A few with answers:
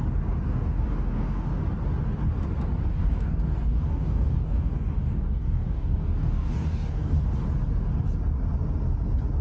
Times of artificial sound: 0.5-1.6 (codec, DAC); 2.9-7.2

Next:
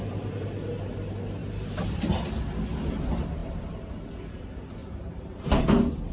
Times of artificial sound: 1.4-2.0 (vocoder, BigVGAN v2); 3.4-4.1; 4.8-5.6

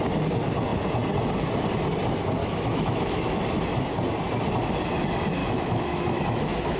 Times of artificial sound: 2.4-3.4 (autoencoder, DAC-VAE); 5.4-6.8

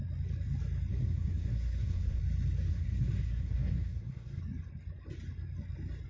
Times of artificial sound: 0.9-2.2 (codec, SNAC); 2.7-4.4

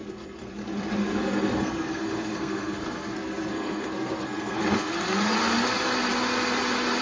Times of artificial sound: 0.0-0.5 (codec, SNAC); 1.0-4.9

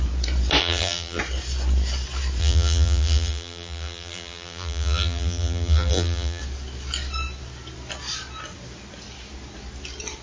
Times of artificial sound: 0.6-1.2 (vocoder, BigVGAN v2); 2.4-6.4